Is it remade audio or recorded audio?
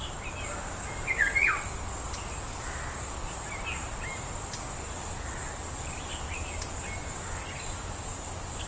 recorded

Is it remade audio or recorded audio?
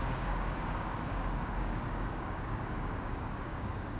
remade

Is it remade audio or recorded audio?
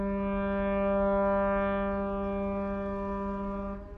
recorded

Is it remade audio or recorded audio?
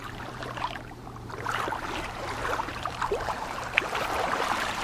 remade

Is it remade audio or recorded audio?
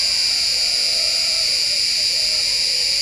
remade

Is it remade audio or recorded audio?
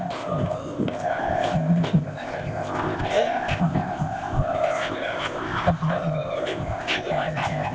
remade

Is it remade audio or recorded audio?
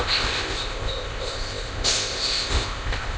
remade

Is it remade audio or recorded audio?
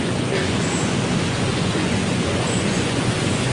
remade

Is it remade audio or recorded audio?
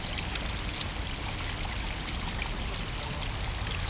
recorded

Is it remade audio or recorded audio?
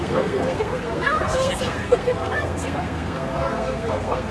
remade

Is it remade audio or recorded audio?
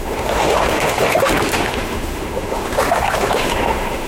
remade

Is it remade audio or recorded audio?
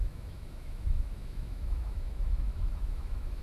remade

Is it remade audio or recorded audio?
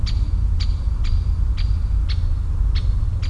recorded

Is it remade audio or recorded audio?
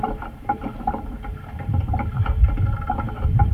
remade